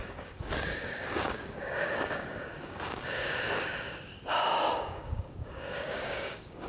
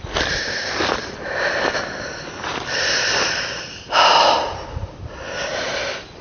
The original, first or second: second